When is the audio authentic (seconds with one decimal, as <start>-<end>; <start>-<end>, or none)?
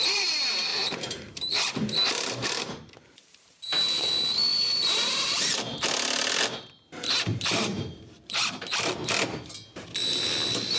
0.0-0.7; 4.1-4.5; 5.6-7.3; 8.9-10.8